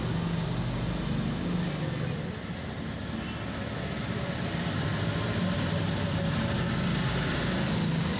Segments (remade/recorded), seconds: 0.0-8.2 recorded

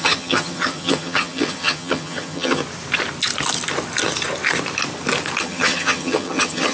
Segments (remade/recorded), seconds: 0.0-2.6 remade; 2.6-5.4 recorded; 5.4-6.7 remade

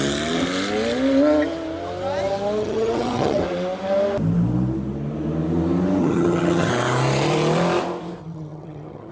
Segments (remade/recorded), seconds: 0.0-2.6 recorded; 2.6-3.4 remade; 3.4-6.0 recorded; 6.0-6.7 remade; 6.7-8.2 recorded; 8.2-9.1 remade

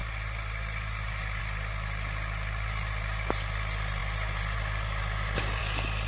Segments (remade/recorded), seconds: 0.0-6.1 recorded

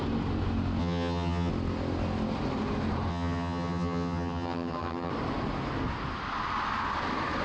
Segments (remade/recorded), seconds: 0.0-0.8 recorded; 0.8-1.5 remade; 1.5-3.1 recorded; 3.1-5.1 remade; 5.1-7.4 recorded

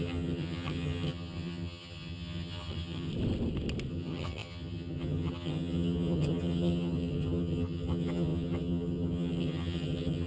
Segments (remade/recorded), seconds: 0.0-3.1 remade; 3.1-3.9 recorded; 3.9-10.3 remade

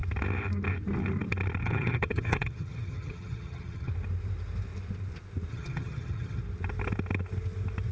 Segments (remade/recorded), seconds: 0.0-1.6 recorded; 1.6-3.9 remade; 3.9-5.5 recorded; 5.5-6.4 remade; 6.4-7.9 recorded